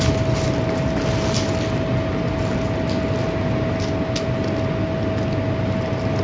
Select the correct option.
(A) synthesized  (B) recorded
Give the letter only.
B